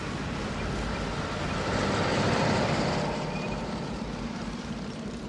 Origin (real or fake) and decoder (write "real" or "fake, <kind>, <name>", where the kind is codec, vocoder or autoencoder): fake, vocoder, BigVGAN v2